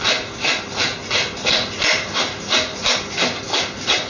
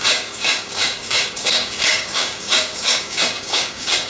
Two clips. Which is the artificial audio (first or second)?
second